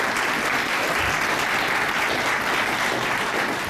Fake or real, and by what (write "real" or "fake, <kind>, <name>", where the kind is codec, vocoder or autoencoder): real